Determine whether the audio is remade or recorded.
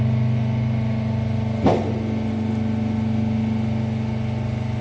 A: recorded